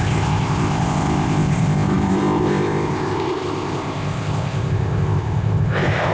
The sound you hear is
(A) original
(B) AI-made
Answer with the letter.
B